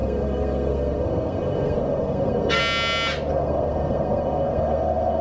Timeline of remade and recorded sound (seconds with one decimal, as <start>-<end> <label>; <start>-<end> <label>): 0.0-2.6 remade; 2.6-3.3 recorded; 3.3-5.2 remade